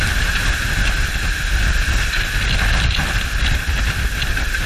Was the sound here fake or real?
real